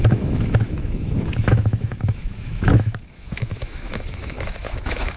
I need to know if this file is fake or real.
fake